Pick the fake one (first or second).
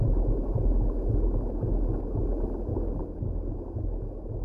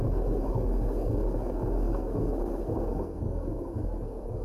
second